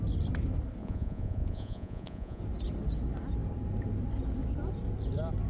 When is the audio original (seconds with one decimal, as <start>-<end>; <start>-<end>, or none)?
0.0-0.8; 2.4-5.5